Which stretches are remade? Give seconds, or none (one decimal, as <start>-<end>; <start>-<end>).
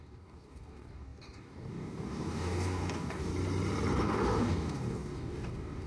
0.0-3.3; 4.0-5.9